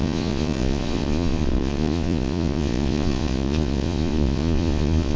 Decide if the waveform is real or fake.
fake